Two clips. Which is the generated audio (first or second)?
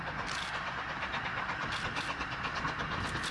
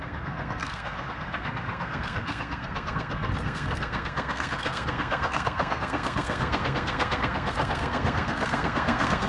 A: second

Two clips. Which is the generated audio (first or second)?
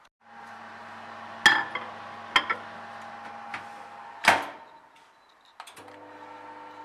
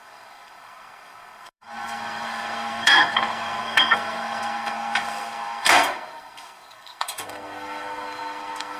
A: second